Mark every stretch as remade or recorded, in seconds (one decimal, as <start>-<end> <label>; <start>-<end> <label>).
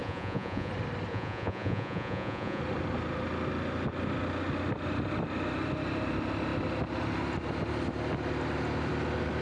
0.0-0.7 remade; 0.7-1.1 recorded; 1.1-2.6 remade; 2.6-9.4 recorded